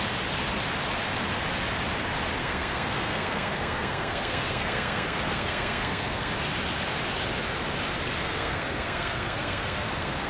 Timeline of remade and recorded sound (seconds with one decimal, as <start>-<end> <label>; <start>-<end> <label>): 0.0-2.4 recorded; 2.4-6.3 remade; 6.3-8.2 recorded; 8.2-10.3 remade